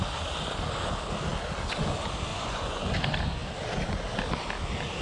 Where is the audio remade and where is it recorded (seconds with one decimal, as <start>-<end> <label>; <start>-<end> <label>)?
0.0-2.3 recorded; 2.3-2.9 remade; 2.9-5.0 recorded